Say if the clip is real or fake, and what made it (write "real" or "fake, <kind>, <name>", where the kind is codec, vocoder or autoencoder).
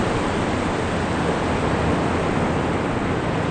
real